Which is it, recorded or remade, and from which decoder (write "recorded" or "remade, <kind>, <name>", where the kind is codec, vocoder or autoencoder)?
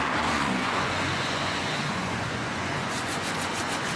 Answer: remade, vocoder, Vocos